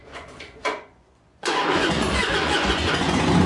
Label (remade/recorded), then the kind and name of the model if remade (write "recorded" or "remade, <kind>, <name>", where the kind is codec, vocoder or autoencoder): remade, vocoder, Vocos